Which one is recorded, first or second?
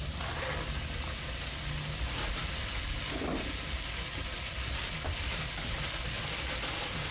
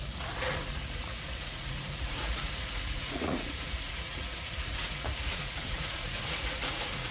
first